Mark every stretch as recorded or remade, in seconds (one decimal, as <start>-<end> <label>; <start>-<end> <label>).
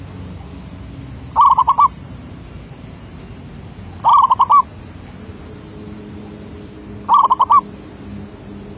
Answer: 0.0-1.6 recorded; 1.6-3.2 remade; 3.2-8.8 recorded